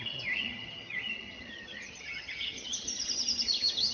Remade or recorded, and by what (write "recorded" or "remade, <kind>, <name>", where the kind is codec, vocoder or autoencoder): remade, vocoder, HiFi-GAN